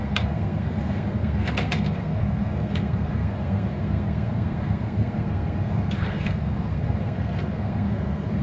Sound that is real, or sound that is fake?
fake